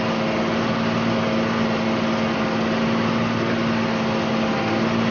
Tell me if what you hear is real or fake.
real